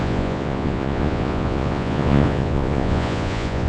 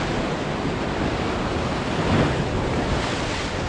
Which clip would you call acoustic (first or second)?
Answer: second